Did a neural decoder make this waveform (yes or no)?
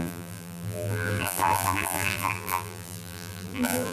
yes